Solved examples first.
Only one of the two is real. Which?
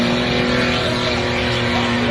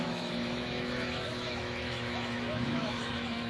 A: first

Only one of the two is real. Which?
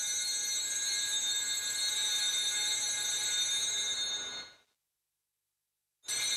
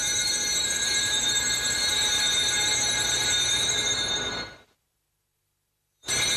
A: first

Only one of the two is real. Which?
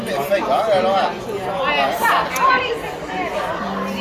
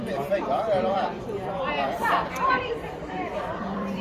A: first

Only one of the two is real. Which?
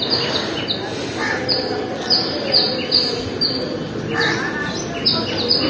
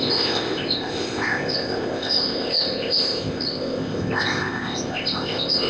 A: first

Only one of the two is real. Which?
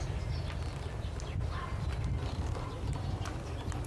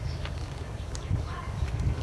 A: first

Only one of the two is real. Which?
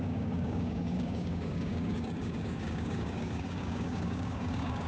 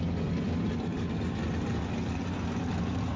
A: second